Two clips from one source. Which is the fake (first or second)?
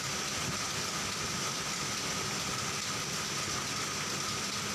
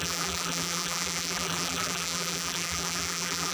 second